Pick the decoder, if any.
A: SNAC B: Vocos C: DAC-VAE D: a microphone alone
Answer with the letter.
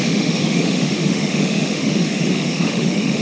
C